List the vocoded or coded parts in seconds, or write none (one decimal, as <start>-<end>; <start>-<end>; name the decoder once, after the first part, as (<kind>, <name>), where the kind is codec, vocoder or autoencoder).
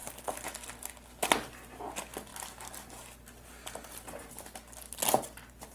none